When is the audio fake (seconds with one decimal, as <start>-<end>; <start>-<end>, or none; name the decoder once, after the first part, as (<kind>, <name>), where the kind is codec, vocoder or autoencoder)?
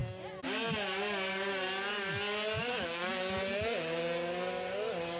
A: none